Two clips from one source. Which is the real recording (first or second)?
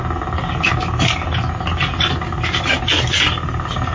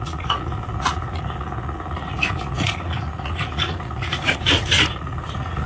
first